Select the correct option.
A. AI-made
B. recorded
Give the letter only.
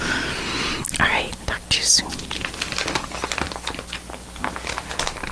B